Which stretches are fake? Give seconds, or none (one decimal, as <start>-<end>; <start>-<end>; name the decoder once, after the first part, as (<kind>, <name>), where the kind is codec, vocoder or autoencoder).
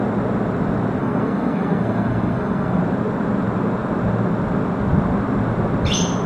1.0-2.8 (codec, SNAC)